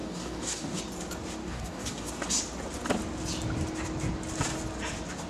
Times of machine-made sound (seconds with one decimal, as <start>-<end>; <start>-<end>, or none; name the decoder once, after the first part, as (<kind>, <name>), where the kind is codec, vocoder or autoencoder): 0.0-0.8 (codec, DAC); 1.4-2.1